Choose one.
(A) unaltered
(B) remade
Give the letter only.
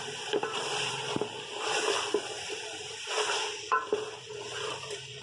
B